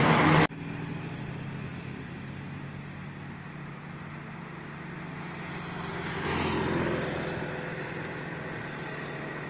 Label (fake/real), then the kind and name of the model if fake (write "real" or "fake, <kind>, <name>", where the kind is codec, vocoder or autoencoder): real